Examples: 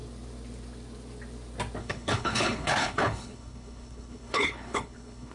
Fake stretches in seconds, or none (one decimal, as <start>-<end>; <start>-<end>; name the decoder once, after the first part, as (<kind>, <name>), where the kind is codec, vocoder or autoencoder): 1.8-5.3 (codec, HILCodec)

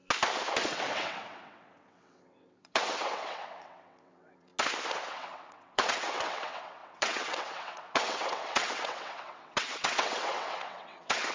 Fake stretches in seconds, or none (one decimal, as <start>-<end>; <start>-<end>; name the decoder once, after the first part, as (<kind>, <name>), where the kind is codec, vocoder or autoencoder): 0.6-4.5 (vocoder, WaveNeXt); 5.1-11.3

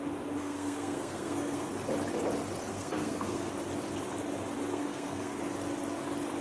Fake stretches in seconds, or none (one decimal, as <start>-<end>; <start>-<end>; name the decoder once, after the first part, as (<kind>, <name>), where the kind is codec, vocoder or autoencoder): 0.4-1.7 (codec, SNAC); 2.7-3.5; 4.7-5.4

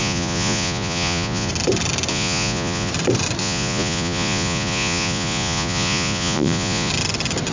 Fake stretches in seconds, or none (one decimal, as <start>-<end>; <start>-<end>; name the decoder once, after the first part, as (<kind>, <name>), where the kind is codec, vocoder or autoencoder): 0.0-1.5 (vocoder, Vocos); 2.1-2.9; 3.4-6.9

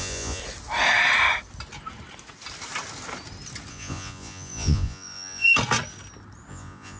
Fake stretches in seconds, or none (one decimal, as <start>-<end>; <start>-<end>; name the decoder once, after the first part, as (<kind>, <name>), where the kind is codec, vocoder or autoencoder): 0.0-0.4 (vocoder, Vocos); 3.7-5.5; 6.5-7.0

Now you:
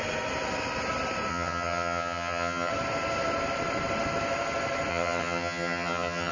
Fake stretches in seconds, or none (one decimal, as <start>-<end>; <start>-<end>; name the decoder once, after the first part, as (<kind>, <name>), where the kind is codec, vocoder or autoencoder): 1.3-2.7 (vocoder, HiFi-GAN); 4.9-6.3